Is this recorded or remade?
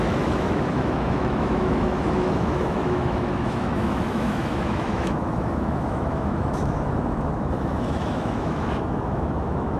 remade